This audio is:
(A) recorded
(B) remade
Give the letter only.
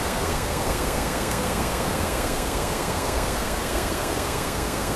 B